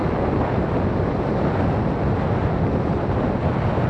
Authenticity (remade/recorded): recorded